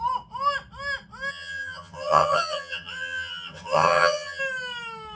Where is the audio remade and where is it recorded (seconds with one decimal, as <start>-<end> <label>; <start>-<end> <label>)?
0.0-1.3 recorded; 1.3-4.4 remade; 4.4-5.2 recorded